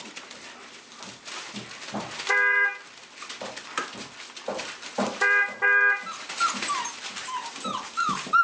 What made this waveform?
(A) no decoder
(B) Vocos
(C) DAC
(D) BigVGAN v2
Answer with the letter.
D